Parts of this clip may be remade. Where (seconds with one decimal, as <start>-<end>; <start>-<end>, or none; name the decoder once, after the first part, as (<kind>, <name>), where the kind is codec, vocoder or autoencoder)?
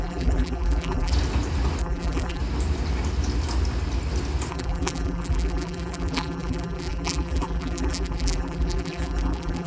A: 0.0-1.1 (vocoder, BigVGAN v2); 1.8-2.4; 4.5-9.7